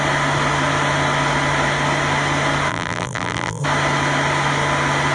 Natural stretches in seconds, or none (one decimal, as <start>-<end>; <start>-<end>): 0.0-2.7; 3.6-5.1